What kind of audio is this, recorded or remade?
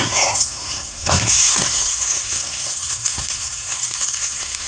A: remade